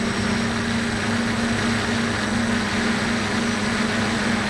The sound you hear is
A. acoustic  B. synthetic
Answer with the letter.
A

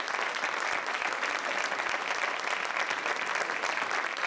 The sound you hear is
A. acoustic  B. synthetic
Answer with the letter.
A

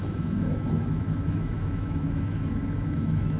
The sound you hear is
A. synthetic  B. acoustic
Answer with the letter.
A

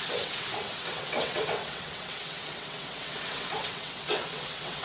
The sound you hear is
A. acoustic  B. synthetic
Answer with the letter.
B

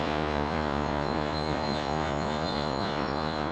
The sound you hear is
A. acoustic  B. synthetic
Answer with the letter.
B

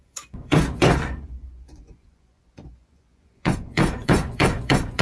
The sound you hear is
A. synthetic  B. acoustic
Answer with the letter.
A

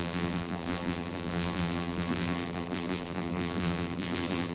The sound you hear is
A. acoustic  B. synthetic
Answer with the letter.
B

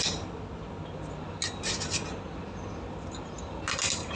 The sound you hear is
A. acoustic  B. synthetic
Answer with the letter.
A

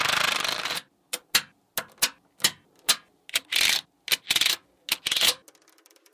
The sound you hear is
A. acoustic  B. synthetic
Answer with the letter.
A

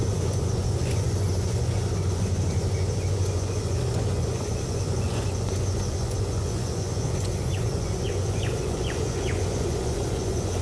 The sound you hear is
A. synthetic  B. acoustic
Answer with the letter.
A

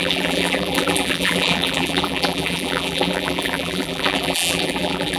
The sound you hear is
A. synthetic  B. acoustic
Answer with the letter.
A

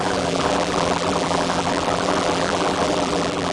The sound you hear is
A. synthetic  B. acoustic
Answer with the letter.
A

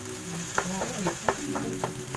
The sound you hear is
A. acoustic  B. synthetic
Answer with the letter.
A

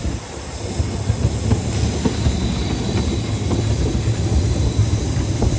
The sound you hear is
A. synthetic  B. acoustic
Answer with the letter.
B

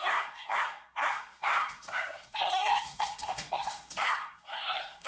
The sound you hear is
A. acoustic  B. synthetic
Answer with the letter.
B